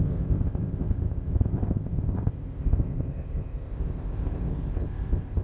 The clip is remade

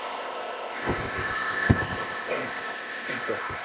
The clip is remade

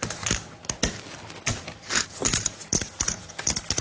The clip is recorded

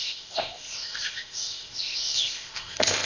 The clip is remade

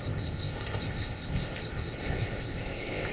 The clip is remade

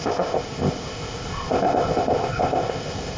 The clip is remade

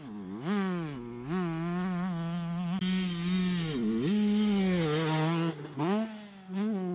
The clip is recorded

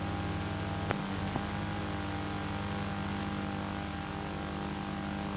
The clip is recorded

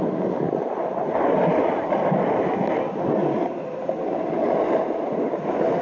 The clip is recorded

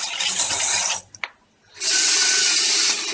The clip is recorded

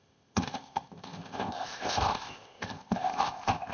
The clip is remade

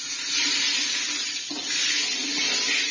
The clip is recorded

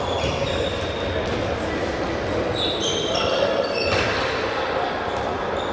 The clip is recorded